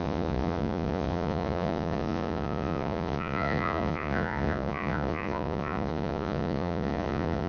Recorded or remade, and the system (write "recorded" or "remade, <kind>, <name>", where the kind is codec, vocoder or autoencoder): remade, vocoder, Vocos